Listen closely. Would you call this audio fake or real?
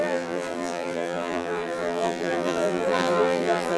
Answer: fake